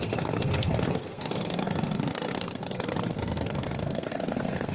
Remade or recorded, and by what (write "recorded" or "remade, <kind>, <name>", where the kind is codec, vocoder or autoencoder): remade, codec, SNAC